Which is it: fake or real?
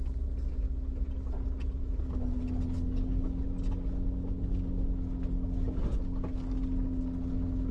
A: real